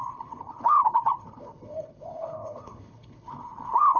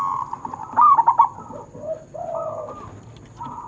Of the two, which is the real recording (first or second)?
second